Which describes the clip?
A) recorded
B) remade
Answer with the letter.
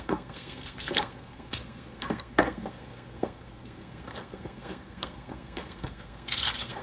B